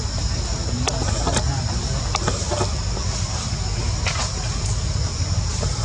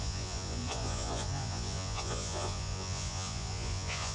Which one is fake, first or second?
second